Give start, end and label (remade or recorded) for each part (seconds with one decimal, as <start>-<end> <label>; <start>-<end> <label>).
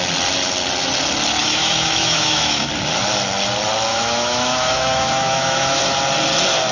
0.0-1.4 recorded; 1.4-2.7 remade; 2.7-3.9 recorded; 3.9-5.8 remade; 5.8-6.7 recorded